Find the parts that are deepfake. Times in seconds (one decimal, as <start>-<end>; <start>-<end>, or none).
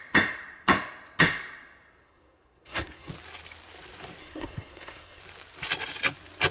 2.0-3.1; 4.2-5.2